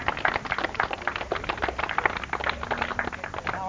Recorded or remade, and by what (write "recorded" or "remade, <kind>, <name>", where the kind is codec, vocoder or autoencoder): recorded